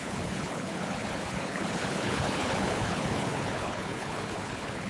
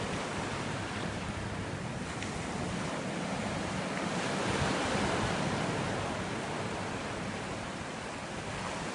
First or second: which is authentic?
second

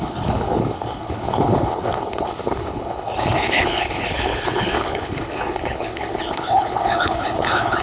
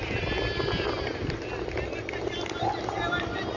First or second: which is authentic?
second